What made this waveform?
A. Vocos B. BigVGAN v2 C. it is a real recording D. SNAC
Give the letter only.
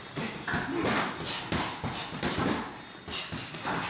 B